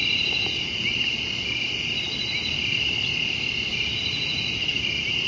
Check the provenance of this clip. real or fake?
real